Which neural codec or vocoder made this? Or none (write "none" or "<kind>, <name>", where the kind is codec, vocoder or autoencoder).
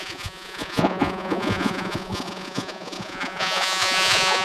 vocoder, Vocos